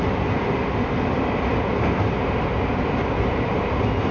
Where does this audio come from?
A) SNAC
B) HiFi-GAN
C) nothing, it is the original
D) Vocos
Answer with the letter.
C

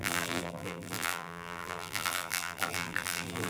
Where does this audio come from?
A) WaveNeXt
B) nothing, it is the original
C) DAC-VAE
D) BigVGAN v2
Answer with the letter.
D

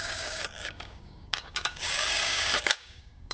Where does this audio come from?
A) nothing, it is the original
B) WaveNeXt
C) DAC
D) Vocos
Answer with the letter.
C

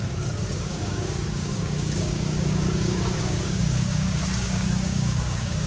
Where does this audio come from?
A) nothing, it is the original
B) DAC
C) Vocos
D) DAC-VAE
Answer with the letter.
B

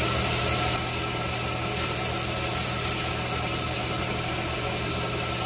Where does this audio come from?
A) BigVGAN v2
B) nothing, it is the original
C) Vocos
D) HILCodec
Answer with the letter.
B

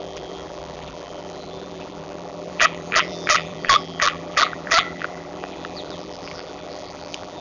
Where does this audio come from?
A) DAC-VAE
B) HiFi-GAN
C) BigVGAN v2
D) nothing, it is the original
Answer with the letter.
C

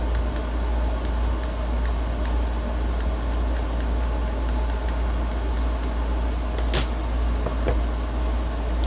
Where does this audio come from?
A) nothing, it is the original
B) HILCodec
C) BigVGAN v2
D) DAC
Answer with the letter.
A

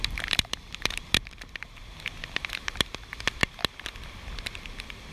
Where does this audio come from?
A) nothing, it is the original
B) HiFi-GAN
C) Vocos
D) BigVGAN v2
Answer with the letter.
A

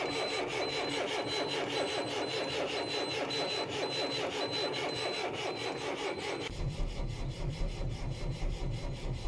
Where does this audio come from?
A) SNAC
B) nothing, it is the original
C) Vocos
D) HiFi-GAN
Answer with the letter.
B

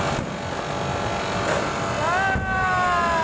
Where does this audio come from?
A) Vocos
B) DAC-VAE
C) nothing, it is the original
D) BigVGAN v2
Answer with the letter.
C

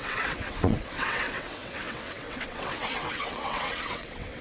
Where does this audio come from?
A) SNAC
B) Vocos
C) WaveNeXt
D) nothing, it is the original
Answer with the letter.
C